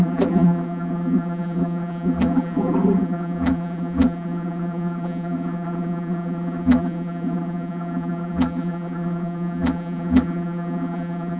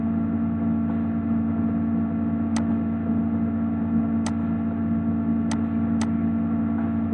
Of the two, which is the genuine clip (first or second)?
second